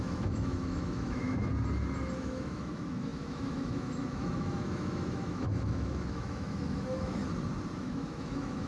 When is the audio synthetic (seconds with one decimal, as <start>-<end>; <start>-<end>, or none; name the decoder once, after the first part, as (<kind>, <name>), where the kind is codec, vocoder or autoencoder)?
0.0-1.5 (autoencoder, DAC-VAE); 2.2-7.2; 7.8-8.7

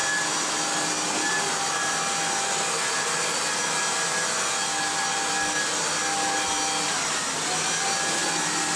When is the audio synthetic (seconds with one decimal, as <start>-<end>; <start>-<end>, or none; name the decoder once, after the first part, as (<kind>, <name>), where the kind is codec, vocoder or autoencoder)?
none

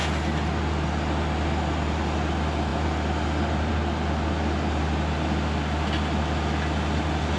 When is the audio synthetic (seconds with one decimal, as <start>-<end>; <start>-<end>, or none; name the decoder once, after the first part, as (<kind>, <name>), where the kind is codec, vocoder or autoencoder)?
none

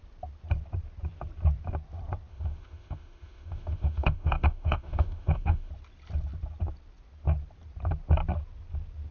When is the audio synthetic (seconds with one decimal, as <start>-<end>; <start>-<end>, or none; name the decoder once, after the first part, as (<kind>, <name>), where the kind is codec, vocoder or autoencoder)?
2.3-5.7 (autoencoder, DAC-VAE)

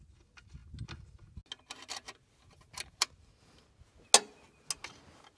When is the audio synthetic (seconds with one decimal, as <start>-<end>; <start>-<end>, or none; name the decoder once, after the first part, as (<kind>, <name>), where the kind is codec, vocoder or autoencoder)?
none

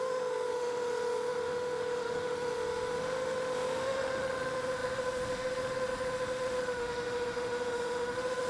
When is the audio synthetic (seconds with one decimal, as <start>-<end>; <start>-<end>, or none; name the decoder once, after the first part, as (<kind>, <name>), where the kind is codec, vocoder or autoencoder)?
0.0-8.5 (autoencoder, DAC-VAE)

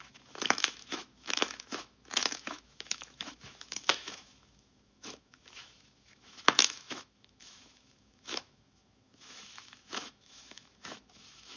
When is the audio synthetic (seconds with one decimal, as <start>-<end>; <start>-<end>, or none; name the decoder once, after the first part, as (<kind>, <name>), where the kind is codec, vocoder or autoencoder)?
0.0-11.6 (autoencoder, DAC-VAE)